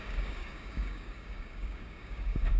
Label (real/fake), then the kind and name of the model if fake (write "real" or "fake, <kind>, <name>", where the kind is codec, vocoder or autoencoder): fake, codec, DAC